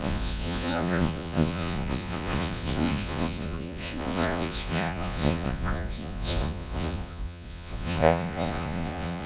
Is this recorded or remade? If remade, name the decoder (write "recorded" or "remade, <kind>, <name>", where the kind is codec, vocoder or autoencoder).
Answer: remade, vocoder, Vocos